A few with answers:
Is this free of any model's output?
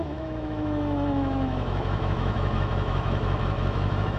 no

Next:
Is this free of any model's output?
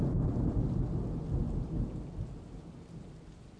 yes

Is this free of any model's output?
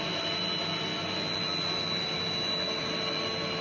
yes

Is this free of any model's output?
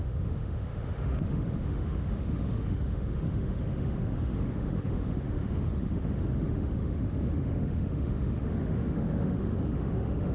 no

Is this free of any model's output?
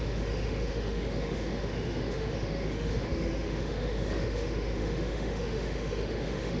no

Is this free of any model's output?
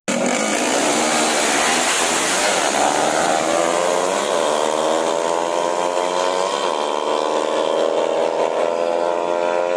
yes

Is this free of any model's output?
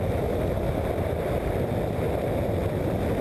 yes